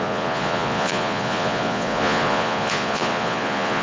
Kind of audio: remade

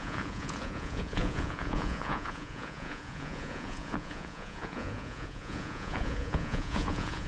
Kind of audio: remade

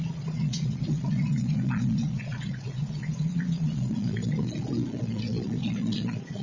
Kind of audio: remade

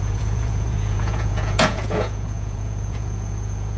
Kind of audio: remade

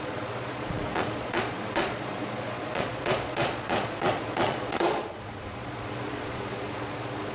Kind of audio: remade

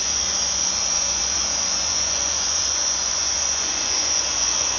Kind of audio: remade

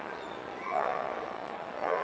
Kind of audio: remade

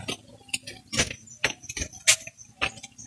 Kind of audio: recorded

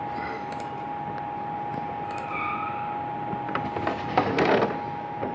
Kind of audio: recorded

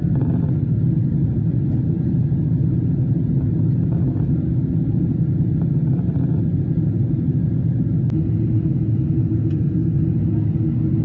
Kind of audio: recorded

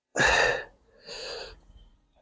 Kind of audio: remade